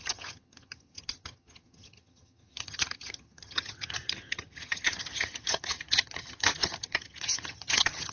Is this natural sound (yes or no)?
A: no